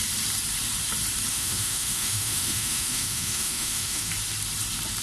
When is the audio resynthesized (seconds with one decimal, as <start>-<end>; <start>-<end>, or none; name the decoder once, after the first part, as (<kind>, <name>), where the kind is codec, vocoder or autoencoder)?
1.3-4.1 (autoencoder, DAC-VAE)